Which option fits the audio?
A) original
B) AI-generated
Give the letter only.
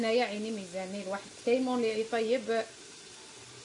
A